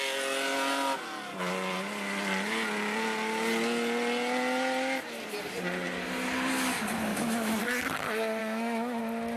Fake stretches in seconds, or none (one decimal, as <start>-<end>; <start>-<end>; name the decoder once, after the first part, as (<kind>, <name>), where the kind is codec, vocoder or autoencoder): 7.1-7.6 (autoencoder, DAC-VAE); 8.4-9.0